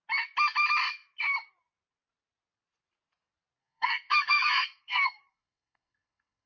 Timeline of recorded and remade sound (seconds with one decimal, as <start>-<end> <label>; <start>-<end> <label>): 0.0-3.6 recorded; 3.6-6.5 remade